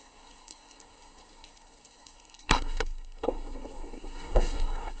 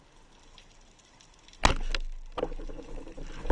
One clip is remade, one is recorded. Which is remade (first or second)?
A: first